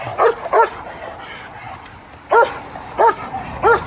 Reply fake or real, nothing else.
real